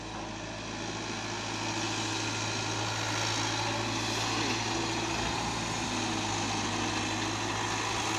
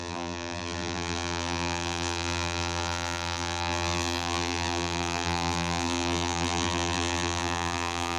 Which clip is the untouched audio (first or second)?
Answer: first